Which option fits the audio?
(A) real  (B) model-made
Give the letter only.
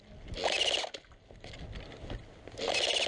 A